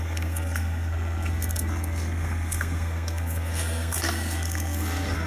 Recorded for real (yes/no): no